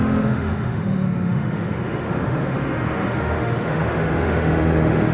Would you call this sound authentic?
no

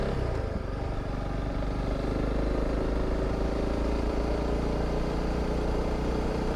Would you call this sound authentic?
yes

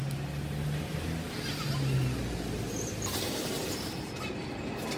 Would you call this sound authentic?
yes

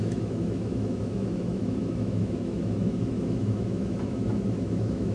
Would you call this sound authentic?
no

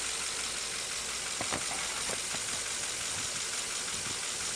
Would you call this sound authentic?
yes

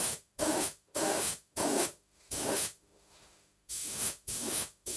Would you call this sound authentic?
no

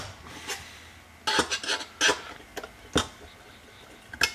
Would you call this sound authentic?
yes